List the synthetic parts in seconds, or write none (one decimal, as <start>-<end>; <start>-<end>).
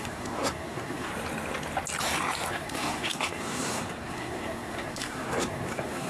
0.0-1.1; 2.5-6.1